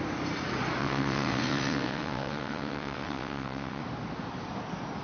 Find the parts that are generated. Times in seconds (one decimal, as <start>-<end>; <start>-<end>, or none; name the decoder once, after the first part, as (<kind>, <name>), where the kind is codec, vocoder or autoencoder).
0.8-3.8 (vocoder, WaveNeXt)